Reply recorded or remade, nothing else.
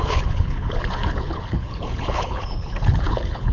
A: remade